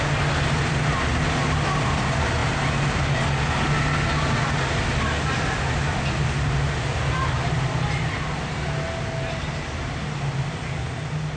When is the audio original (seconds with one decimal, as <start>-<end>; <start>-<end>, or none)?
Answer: 0.0-11.4